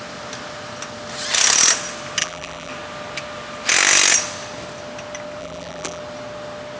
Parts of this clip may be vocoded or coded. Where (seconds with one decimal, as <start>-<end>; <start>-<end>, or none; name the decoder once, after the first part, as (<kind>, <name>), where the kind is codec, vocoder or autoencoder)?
2.2-2.7 (vocoder, BigVGAN v2); 5.4-6.0